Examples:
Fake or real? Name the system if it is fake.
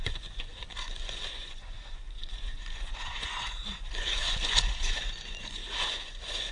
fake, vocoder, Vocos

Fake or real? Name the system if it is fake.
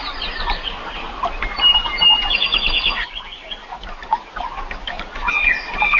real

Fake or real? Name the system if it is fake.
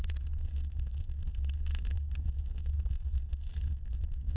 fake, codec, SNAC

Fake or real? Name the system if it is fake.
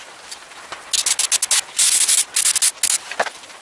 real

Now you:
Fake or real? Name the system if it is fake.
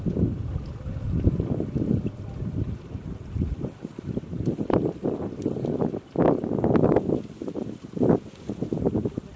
real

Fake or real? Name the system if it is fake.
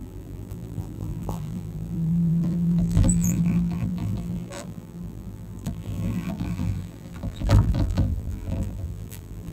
fake, vocoder, BigVGAN v2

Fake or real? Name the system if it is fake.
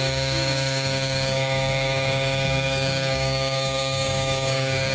fake, codec, DAC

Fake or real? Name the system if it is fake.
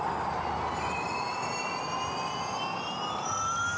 real